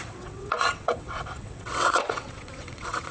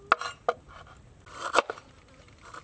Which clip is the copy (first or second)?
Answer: first